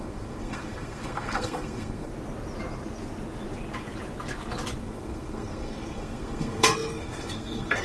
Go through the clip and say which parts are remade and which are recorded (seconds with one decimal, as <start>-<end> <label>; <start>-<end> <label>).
0.0-2.1 remade; 2.1-4.8 recorded; 4.8-7.8 remade